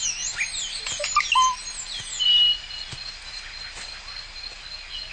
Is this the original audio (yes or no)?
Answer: yes